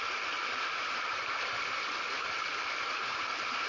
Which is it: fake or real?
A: real